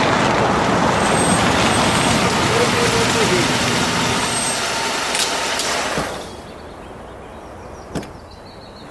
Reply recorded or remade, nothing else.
recorded